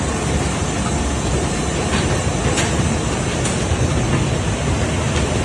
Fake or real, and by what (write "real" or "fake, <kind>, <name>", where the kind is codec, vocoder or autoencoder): real